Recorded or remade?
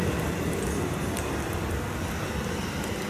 recorded